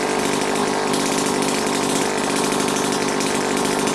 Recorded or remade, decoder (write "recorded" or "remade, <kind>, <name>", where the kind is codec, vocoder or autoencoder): recorded